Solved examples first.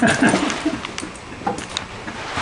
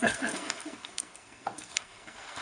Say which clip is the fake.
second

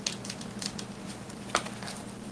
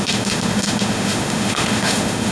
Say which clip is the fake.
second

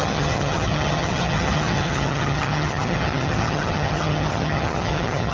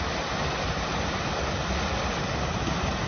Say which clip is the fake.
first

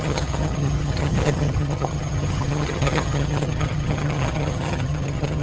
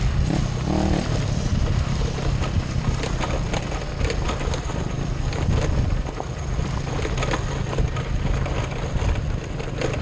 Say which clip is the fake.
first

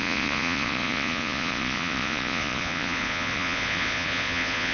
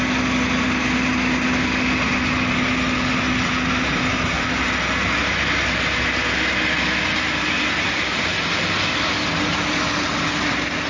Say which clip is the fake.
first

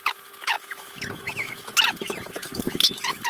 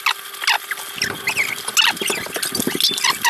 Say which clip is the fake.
first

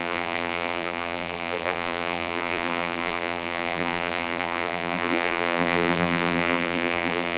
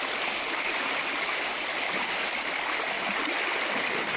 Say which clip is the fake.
first